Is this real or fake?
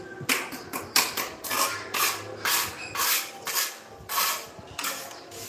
real